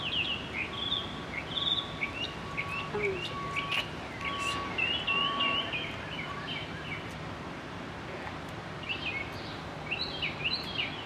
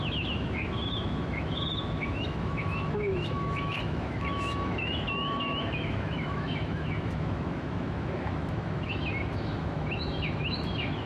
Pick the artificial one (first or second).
second